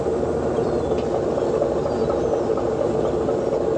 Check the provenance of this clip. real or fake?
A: real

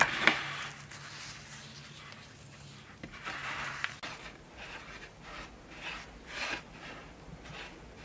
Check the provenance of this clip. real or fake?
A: real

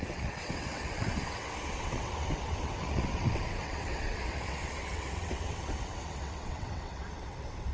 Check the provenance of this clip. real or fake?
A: fake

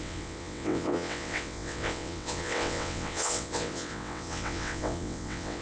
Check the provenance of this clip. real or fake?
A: fake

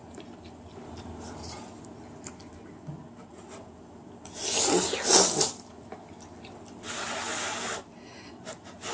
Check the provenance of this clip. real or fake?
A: real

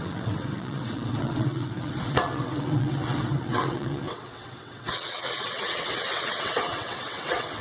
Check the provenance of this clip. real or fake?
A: fake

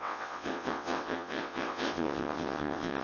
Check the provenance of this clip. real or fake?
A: fake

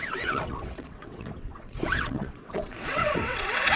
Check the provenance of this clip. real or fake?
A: fake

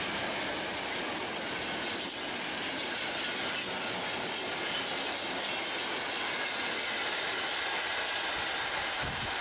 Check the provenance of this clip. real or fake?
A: real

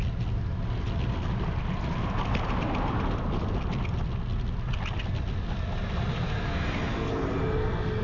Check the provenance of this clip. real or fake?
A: real